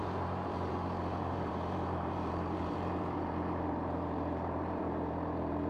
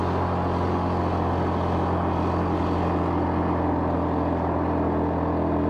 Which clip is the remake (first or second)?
first